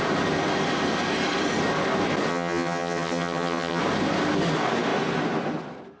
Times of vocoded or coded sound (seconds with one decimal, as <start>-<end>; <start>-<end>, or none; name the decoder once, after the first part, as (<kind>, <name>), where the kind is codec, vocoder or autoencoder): 2.3-3.8 (vocoder, HiFi-GAN)